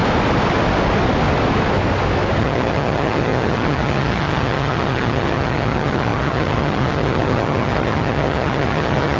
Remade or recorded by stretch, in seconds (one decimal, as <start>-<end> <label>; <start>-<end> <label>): 0.0-2.4 recorded; 2.4-9.2 remade